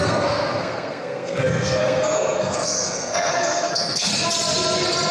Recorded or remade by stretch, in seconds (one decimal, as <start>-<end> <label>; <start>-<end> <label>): 0.0-4.1 remade; 4.1-5.1 recorded